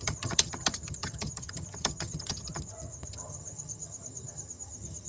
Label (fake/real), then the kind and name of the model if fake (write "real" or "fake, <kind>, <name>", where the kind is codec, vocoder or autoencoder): fake, vocoder, HiFi-GAN